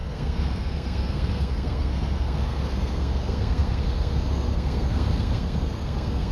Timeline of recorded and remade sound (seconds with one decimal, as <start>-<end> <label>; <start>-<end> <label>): 0.0-6.3 remade